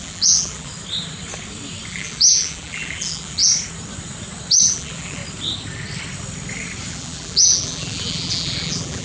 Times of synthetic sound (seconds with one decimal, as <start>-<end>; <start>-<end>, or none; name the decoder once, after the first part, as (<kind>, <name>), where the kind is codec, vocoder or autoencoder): 0.0-0.7 (vocoder, BigVGAN v2); 1.9-3.4; 4.6-5.2; 6.9-9.0

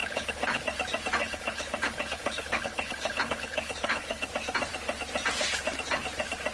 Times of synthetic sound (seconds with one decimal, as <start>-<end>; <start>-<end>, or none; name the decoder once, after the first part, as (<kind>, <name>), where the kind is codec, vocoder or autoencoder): 0.0-0.6 (codec, HILCodec); 1.2-4.3

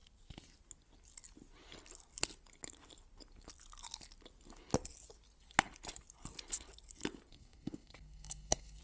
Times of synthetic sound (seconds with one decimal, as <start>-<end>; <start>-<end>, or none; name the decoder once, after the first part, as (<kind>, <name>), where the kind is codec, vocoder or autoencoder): 7.3-8.8 (codec, SNAC)

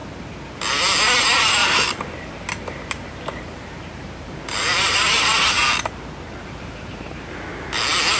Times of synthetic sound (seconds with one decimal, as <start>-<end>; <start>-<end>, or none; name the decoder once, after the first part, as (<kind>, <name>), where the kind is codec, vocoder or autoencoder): 1.2-5.6 (vocoder, BigVGAN v2); 6.4-7.5

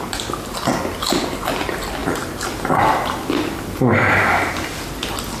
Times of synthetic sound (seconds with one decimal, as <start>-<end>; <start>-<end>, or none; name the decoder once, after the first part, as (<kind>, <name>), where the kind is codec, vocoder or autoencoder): none